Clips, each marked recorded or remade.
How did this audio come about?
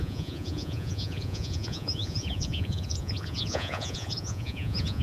remade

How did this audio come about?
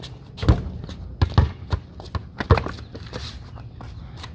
recorded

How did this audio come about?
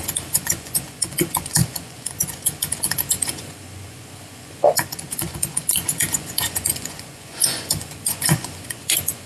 remade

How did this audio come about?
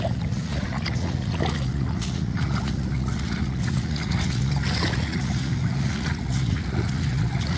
remade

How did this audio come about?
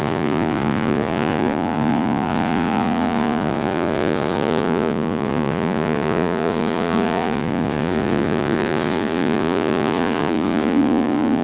remade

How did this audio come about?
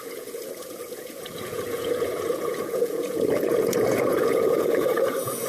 remade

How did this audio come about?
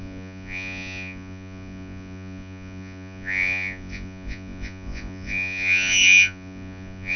remade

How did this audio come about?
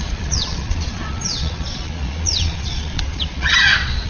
remade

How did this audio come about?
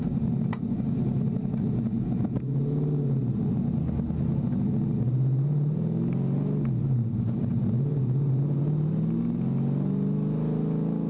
recorded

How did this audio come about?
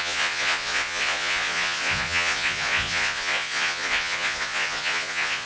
remade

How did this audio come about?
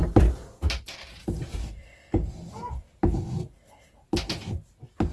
recorded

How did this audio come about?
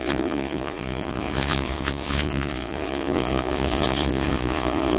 remade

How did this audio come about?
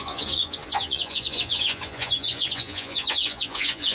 remade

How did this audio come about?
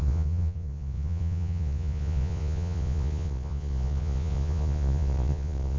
remade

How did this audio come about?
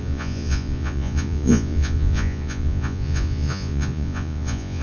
remade